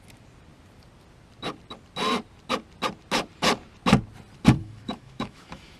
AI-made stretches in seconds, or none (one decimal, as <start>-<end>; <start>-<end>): 4.6-5.8